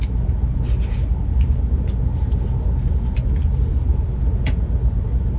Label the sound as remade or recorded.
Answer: recorded